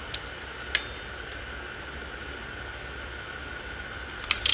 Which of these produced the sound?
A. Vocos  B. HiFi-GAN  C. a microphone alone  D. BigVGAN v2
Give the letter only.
C